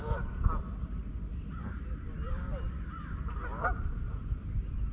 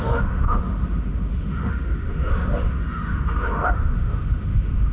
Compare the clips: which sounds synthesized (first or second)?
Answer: second